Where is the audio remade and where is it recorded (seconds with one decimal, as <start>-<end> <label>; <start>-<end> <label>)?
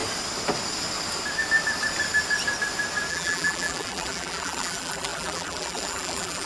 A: 0.0-3.1 recorded; 3.1-6.5 remade